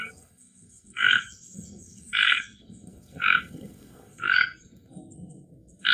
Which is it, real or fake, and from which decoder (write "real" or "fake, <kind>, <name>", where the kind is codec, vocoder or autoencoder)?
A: fake, codec, SNAC